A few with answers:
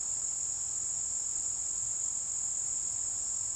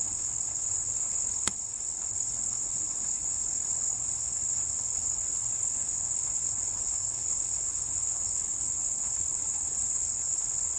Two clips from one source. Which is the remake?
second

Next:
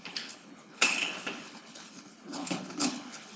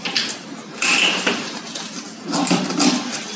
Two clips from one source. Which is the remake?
first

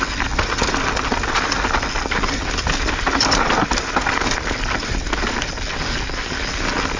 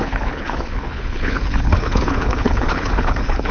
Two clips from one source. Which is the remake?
second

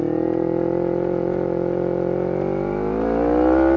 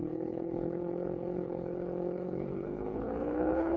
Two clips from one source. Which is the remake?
second